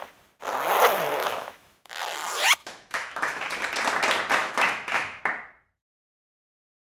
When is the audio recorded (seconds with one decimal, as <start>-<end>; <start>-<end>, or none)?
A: 0.0-1.2; 1.9-2.6; 3.5-4.4; 5.2-6.9